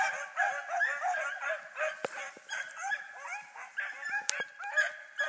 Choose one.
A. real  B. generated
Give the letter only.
A